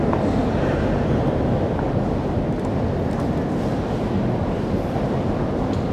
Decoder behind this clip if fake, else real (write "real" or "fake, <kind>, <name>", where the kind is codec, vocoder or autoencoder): real